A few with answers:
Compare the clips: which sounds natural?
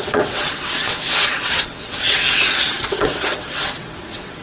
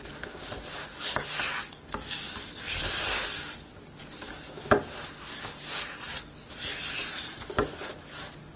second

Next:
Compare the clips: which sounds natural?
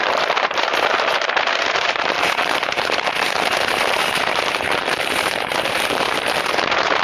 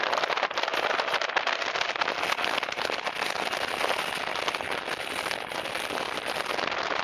second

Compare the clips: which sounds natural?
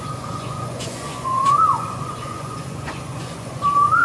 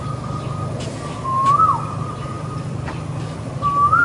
second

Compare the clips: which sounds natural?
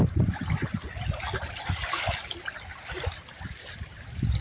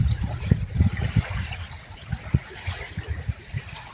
first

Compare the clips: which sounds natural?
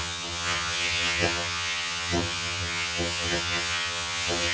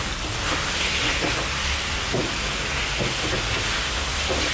second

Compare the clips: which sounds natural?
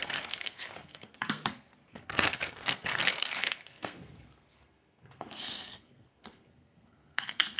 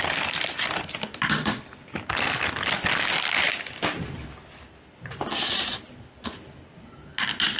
second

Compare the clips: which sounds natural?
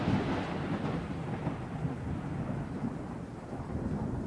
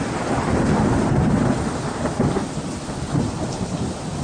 second